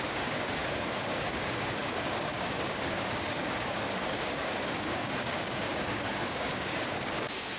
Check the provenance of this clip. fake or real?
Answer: fake